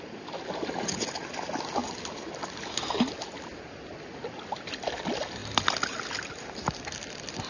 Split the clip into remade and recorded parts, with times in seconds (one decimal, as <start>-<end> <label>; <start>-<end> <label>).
0.0-7.5 recorded